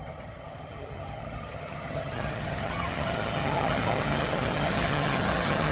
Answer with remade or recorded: remade